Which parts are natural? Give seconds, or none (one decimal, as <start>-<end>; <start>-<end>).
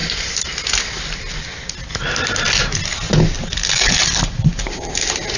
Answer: 0.0-5.4